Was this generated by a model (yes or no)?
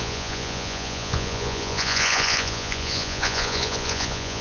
yes